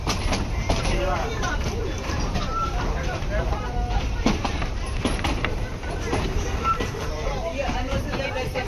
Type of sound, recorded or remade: remade